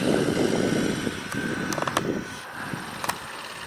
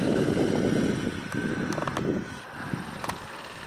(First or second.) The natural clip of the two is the first